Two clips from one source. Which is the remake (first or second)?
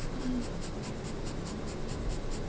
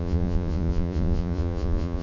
second